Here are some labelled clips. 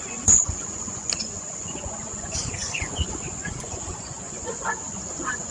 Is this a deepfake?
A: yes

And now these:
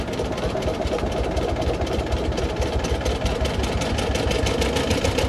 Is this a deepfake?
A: no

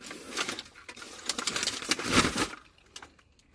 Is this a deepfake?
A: no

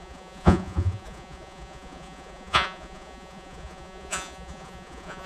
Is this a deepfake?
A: yes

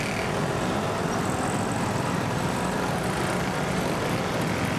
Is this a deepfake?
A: no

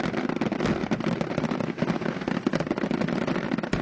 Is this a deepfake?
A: no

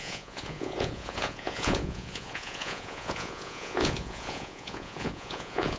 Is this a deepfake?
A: yes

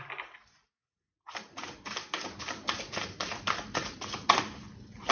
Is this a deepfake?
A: no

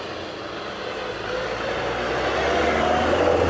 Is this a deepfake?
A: no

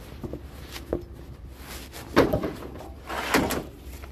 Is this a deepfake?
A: no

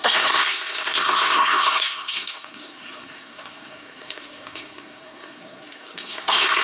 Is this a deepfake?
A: yes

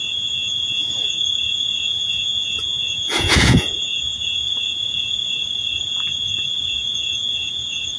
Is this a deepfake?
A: yes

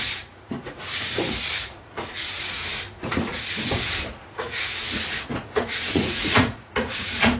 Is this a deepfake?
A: yes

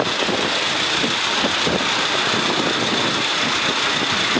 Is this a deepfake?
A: no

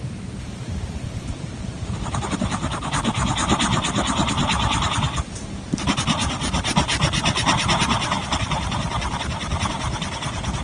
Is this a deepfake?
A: yes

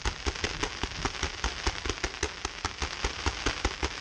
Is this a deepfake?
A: no